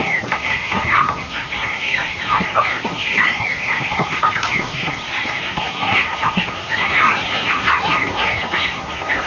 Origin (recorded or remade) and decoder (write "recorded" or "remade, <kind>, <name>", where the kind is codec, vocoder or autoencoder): remade, codec, SNAC